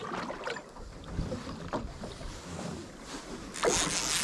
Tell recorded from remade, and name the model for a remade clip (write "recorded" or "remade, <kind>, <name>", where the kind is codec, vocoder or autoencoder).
recorded